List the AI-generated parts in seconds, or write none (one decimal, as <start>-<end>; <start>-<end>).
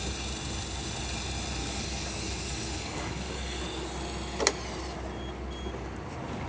1.6-3.6